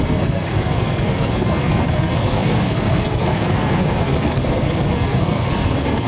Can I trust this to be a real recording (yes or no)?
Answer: no